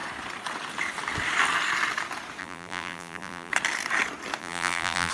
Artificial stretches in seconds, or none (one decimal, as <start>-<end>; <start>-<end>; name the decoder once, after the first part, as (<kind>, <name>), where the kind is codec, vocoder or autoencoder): 2.4-3.5 (vocoder, BigVGAN v2); 4.4-5.1